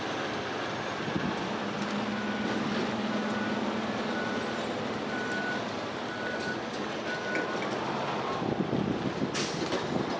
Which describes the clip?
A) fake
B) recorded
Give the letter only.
B